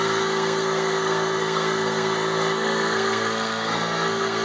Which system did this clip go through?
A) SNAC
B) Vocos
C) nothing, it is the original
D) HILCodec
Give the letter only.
A